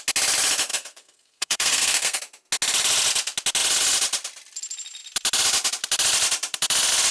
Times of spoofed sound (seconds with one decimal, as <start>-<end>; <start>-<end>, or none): 0.7-2.2